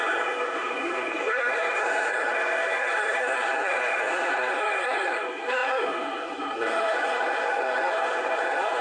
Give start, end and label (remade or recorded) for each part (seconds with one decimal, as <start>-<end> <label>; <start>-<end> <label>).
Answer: 0.0-8.8 remade